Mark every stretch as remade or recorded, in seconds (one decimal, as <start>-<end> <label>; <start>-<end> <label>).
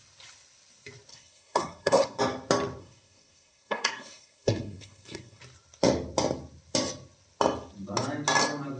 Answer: 0.0-1.1 recorded; 1.1-2.2 remade; 2.2-2.8 recorded; 2.8-5.4 remade; 5.4-8.8 recorded